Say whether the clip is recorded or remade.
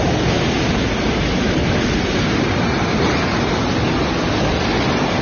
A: recorded